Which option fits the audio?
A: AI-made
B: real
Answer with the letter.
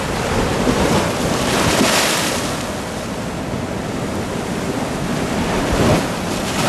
B